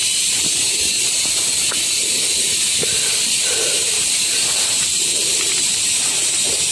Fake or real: real